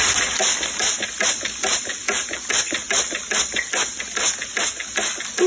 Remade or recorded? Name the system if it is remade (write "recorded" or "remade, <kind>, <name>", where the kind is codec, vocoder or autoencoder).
recorded